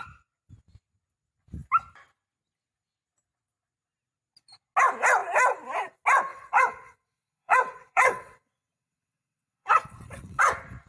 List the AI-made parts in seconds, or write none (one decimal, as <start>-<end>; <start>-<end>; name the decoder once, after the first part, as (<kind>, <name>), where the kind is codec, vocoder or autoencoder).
6.3-10.4 (vocoder, WaveNeXt)